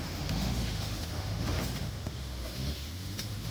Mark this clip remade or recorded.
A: remade